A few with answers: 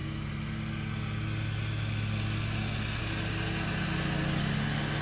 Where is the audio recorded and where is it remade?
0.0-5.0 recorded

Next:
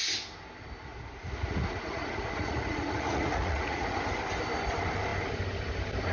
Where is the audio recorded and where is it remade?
0.0-0.9 recorded; 0.9-4.2 remade; 4.2-6.1 recorded

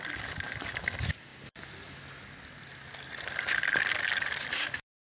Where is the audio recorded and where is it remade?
0.0-5.2 recorded

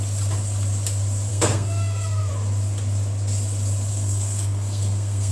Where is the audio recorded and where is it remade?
0.0-1.3 recorded; 1.3-2.3 remade; 2.3-3.9 recorded; 3.9-5.3 remade

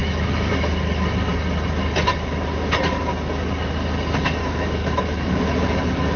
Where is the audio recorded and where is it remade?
0.0-0.5 remade; 0.5-4.4 recorded; 4.4-5.4 remade; 5.4-6.2 recorded

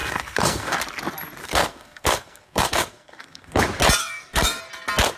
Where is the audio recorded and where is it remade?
0.0-0.8 remade; 0.8-1.4 recorded; 1.4-3.6 remade; 3.6-4.0 recorded; 4.0-4.6 remade; 4.6-5.2 recorded